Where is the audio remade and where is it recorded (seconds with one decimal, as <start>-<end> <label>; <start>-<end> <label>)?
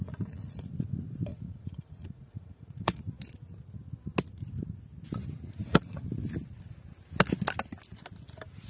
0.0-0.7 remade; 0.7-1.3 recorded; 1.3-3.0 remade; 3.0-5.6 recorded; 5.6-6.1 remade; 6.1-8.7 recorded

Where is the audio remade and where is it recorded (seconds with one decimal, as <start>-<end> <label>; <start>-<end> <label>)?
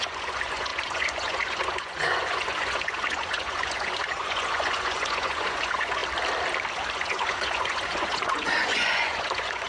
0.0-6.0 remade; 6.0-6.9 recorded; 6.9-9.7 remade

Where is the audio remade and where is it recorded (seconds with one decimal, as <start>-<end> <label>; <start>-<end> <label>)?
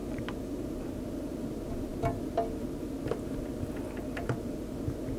0.0-0.9 remade; 0.9-5.2 recorded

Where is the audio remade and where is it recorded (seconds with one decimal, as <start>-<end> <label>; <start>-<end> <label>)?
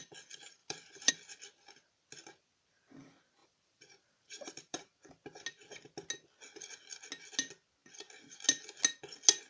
0.0-0.6 recorded; 0.6-1.1 remade; 1.1-3.4 recorded; 3.4-5.0 remade; 5.0-9.5 recorded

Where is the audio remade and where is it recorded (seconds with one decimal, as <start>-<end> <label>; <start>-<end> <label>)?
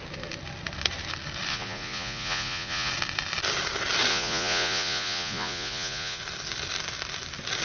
0.0-1.5 recorded; 1.5-2.9 remade; 2.9-4.1 recorded; 4.1-6.2 remade; 6.2-7.6 recorded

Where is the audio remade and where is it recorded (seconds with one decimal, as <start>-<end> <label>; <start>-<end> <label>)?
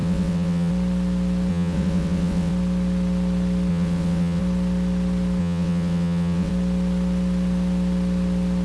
0.0-0.7 remade; 0.7-1.5 recorded; 1.5-2.5 remade; 2.5-3.7 recorded; 3.7-4.4 remade; 4.4-5.4 recorded; 5.4-6.5 remade; 6.5-8.6 recorded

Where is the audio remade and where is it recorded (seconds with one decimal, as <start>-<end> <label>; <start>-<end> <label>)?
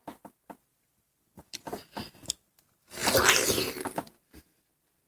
0.0-0.7 recorded; 0.7-2.3 remade; 2.3-5.1 recorded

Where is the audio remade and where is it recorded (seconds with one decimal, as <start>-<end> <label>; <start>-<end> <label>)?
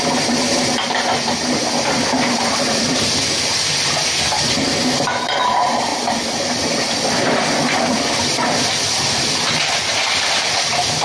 0.0-11.0 remade